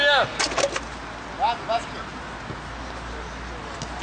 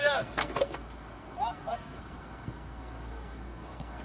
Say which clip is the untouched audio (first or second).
first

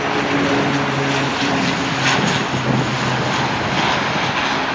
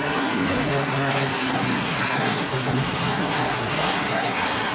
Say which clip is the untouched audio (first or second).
first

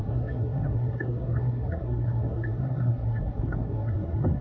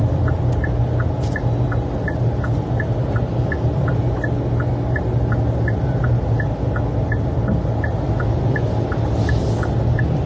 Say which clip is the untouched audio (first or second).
second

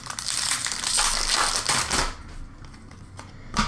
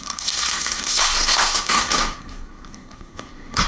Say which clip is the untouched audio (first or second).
first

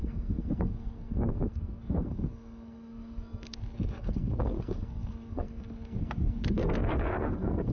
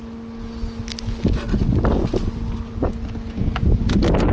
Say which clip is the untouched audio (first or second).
second